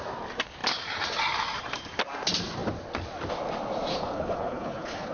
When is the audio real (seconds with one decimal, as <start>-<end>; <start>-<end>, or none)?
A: 0.0-3.9